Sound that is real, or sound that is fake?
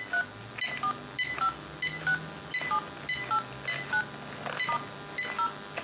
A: real